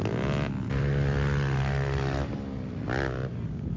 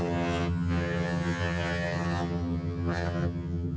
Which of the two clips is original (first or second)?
first